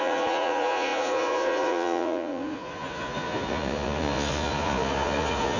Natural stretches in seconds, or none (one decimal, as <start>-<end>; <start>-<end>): none